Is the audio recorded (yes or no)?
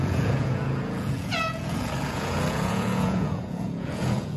no